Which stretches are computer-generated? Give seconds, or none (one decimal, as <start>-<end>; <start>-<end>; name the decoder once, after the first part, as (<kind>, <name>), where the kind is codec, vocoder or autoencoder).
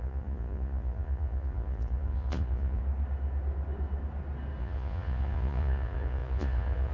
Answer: 0.0-2.8 (vocoder, Vocos); 4.6-6.9